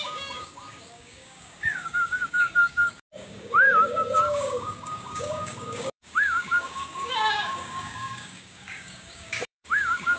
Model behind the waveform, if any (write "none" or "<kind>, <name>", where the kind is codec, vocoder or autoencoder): codec, DAC